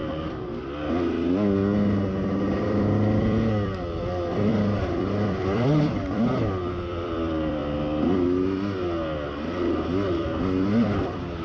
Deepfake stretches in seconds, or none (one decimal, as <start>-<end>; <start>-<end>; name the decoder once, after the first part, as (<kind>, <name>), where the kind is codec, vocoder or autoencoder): 2.6-7.6 (vocoder, BigVGAN v2); 10.1-11.4